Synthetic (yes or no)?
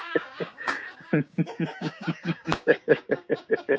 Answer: yes